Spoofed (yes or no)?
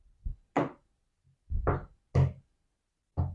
no